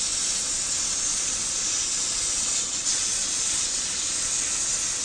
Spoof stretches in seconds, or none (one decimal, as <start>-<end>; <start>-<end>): 1.1-4.1